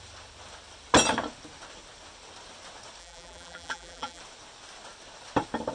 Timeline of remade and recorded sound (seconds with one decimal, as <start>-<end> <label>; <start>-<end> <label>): 0.0-3.0 recorded; 3.0-4.2 remade; 4.2-5.7 recorded